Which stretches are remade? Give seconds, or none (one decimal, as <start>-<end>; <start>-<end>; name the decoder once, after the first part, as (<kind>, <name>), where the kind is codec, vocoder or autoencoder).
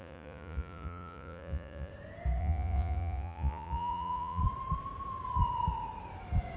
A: 0.0-1.9 (vocoder, Vocos); 2.4-4.4